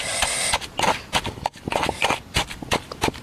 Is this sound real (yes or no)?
no